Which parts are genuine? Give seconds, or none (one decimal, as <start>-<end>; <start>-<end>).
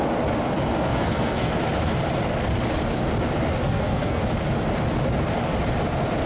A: 0.0-0.9; 1.5-3.6; 4.2-6.3